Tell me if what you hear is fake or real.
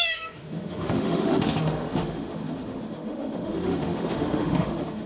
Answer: fake